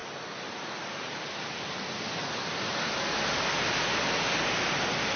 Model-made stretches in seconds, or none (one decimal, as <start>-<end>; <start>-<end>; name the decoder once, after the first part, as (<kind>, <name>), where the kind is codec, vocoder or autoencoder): none